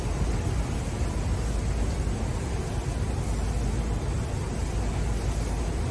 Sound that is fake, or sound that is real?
real